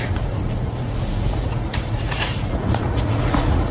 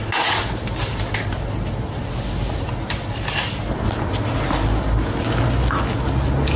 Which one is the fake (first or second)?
first